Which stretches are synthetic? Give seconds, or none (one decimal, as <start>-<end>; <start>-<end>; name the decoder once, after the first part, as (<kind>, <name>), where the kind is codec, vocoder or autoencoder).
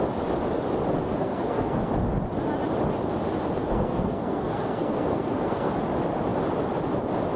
1.0-1.9 (codec, SNAC); 3.6-5.7